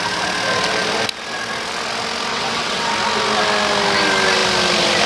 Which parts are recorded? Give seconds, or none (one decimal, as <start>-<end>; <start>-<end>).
0.0-2.3; 2.9-5.1